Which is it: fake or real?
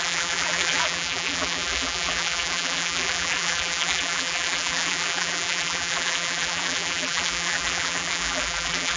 fake